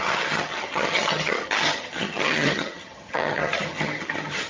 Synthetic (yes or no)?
yes